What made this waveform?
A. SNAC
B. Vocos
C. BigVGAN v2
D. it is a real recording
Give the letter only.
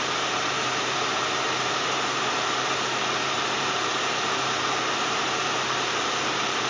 C